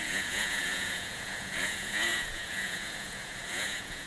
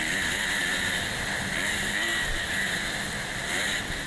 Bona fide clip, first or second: second